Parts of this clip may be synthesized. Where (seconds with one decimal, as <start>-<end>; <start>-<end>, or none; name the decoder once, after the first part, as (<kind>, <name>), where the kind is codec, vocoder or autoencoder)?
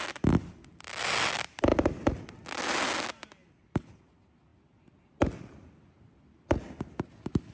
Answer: none